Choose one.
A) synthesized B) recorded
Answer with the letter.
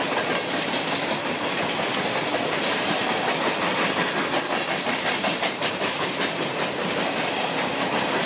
A